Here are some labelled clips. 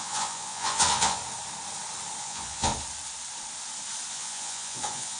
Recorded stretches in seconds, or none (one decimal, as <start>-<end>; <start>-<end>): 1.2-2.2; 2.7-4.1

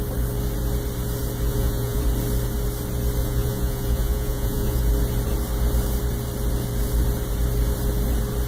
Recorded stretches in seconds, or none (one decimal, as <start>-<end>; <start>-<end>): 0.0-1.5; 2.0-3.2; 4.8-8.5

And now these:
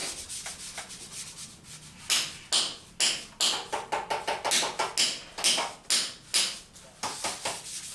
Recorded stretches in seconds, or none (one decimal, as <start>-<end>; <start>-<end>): 0.0-7.9

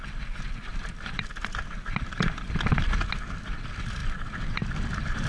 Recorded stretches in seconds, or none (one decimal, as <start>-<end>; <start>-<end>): 0.0-0.7; 1.4-4.0

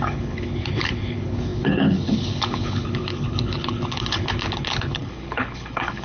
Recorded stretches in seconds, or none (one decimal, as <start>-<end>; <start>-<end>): none

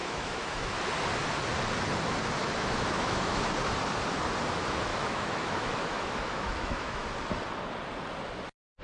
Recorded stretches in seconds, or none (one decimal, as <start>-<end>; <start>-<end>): 0.8-2.4; 3.4-4.9; 7.1-8.8

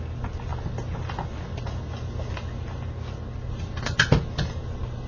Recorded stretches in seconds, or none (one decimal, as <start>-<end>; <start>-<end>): 0.0-5.1

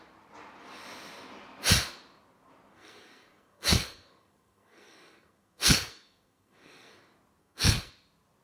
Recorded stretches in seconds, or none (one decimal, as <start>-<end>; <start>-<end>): 0.0-2.7; 6.9-7.4; 7.9-8.4